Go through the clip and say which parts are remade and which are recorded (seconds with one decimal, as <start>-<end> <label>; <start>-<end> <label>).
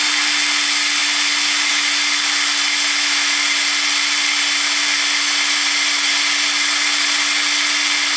0.0-8.2 recorded